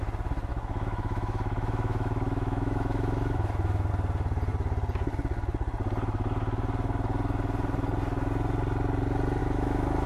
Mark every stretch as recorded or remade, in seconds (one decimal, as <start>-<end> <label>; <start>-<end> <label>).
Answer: 0.0-0.5 recorded; 0.5-3.9 remade; 3.9-9.4 recorded; 9.4-10.1 remade